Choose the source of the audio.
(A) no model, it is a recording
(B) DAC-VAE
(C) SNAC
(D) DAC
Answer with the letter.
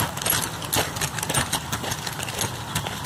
A